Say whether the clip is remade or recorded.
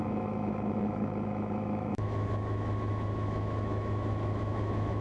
remade